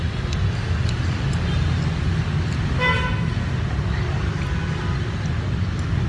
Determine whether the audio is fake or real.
real